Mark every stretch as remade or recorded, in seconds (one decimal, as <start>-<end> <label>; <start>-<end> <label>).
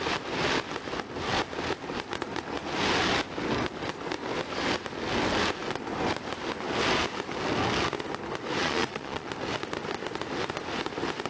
0.0-8.6 recorded; 8.6-9.3 remade; 9.3-11.3 recorded